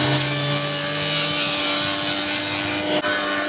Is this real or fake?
real